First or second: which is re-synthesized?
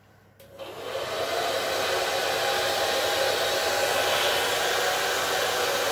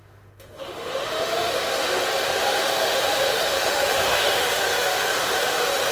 second